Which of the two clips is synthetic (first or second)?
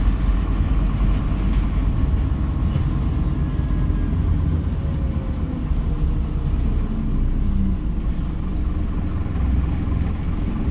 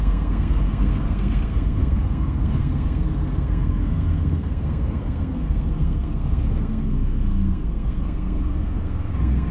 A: second